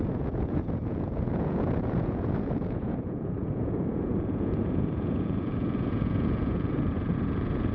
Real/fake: fake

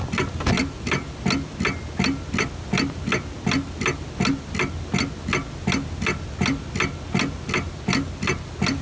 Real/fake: real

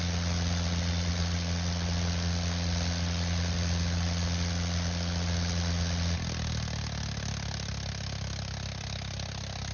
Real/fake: real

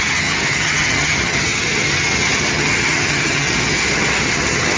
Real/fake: fake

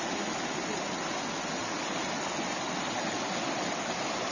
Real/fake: real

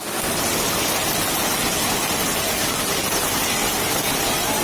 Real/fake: real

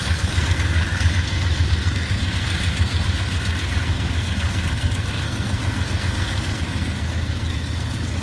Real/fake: fake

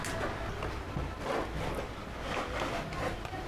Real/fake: real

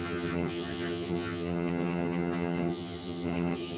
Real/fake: fake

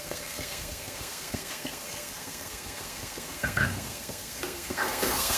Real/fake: fake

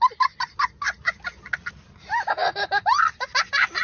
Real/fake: real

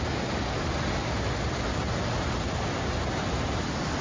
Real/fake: real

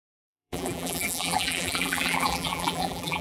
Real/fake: fake